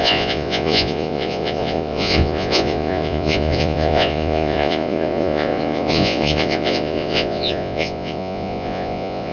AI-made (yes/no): yes